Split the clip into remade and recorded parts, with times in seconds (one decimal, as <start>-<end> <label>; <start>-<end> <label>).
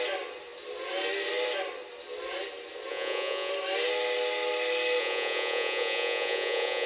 0.0-2.9 recorded; 2.9-3.5 remade; 3.5-5.0 recorded; 5.0-6.9 remade